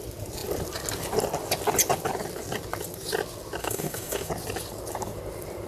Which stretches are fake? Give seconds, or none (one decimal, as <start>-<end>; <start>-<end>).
3.6-4.3